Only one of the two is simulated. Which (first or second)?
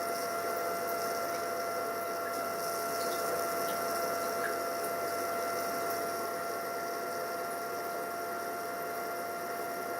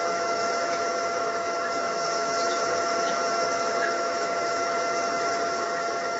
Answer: second